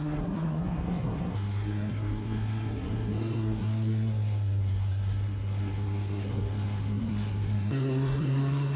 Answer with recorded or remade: remade